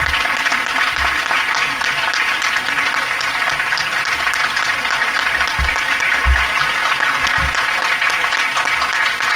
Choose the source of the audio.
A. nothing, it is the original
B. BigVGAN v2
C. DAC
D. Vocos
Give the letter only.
A